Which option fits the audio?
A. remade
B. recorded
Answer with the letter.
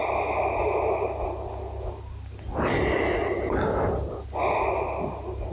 B